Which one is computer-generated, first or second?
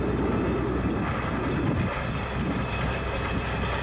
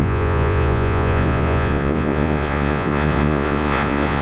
second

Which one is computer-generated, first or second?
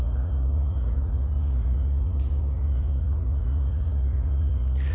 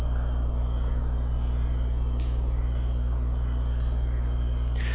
first